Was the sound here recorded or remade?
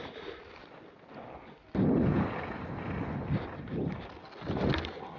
recorded